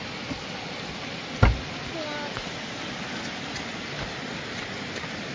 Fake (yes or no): no